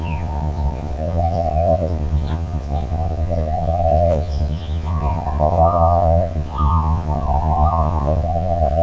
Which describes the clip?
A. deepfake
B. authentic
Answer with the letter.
A